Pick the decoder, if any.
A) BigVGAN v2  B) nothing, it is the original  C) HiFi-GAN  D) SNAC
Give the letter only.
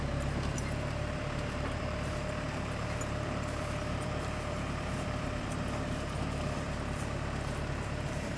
A